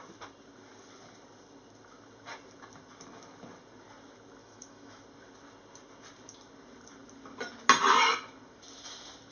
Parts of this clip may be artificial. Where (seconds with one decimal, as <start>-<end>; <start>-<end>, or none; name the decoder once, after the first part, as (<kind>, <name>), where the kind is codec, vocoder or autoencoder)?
4.4-5.0 (autoencoder, DAC-VAE)